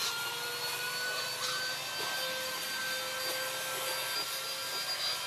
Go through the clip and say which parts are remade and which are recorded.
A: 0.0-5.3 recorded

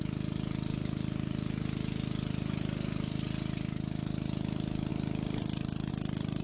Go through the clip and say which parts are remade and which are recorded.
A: 0.0-6.4 recorded